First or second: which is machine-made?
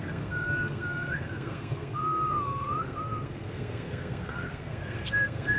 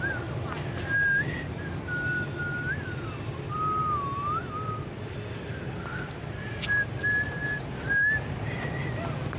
first